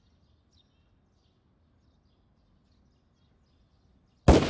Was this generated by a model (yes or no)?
no